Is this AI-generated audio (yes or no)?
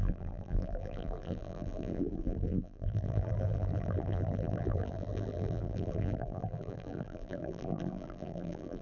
yes